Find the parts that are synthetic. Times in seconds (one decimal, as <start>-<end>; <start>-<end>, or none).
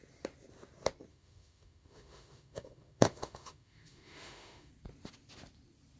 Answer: 1.1-4.7